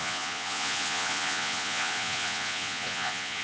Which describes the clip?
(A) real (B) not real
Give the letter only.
B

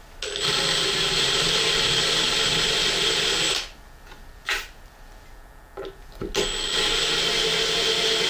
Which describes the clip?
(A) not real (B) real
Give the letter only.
B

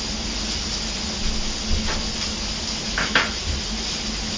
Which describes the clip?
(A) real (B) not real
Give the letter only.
A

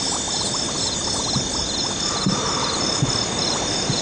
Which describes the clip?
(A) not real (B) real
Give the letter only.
B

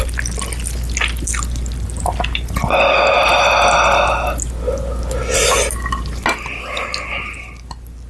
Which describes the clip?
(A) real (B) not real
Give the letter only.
A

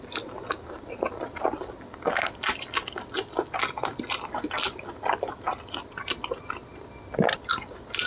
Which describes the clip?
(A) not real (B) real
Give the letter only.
B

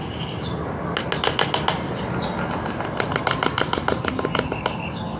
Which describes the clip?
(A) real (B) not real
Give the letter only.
A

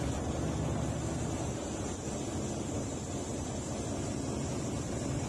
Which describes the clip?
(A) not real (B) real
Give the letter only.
B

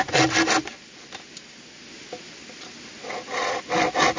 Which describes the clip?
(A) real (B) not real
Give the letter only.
A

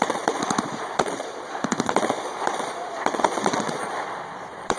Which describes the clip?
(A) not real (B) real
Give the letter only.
A